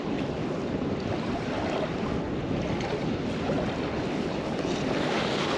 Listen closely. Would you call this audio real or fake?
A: real